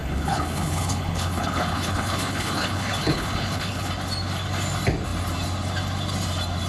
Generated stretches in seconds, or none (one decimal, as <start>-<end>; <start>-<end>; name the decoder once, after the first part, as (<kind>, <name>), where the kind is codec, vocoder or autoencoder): 0.0-3.9 (codec, HILCodec)

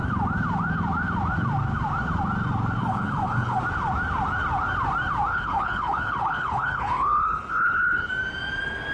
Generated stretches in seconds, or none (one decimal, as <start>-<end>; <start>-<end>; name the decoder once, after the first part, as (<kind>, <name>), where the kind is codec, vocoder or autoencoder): 2.8-3.6 (codec, HILCodec); 5.3-8.1